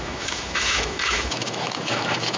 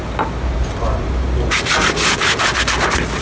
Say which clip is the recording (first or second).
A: second